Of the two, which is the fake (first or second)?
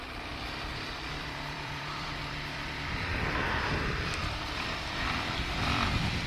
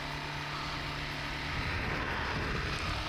first